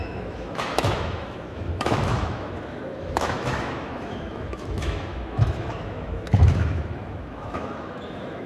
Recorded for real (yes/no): no